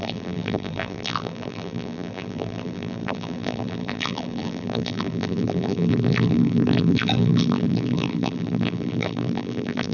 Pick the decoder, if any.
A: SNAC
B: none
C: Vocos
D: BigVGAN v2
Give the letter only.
D